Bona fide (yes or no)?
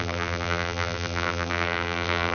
no